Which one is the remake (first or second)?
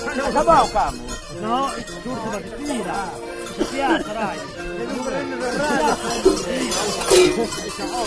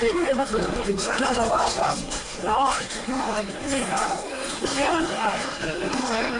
second